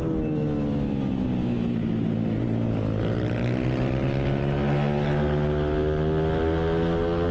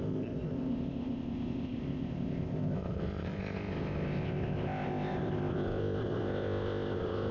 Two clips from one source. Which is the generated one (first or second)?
second